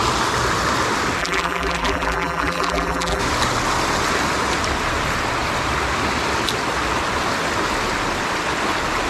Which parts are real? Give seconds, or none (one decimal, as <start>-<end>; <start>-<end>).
0.0-1.2; 3.2-9.1